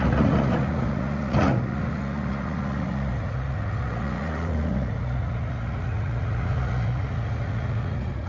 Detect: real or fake fake